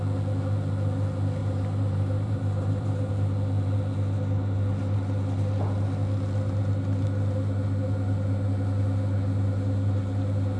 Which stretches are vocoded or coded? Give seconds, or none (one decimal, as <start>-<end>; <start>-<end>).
1.4-3.1